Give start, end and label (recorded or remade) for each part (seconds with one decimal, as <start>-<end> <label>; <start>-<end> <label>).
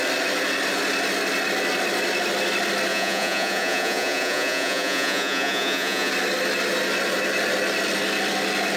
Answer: 0.0-2.9 recorded; 2.9-6.1 remade; 6.1-8.8 recorded